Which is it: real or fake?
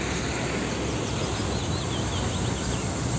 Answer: real